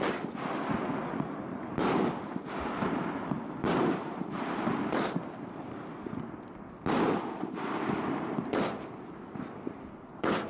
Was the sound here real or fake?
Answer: real